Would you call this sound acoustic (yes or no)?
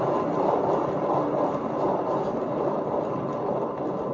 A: yes